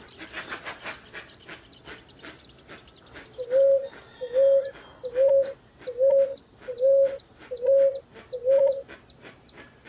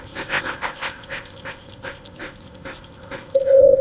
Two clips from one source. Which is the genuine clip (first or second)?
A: first